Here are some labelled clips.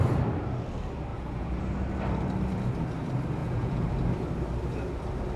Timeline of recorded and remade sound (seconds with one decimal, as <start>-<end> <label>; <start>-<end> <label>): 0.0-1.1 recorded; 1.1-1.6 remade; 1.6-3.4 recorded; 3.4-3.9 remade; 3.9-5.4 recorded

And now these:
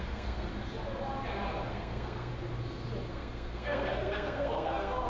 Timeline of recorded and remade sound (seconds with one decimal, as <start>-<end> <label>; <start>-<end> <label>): 0.0-0.5 remade; 0.5-1.7 recorded; 1.7-2.3 remade; 2.3-3.1 recorded; 3.1-5.1 remade

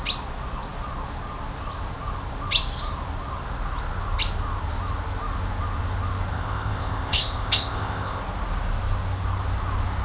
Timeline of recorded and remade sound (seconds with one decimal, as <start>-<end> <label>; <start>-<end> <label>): 0.0-6.3 recorded; 6.3-8.2 remade; 8.2-10.0 recorded